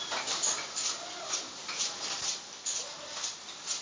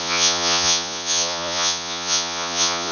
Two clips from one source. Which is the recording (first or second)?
first